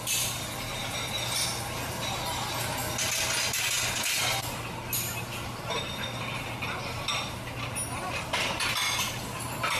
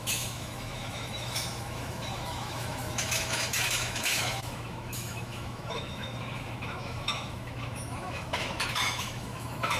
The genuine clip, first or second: first